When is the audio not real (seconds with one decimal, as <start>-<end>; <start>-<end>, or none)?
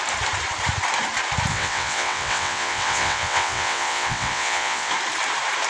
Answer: 1.5-4.9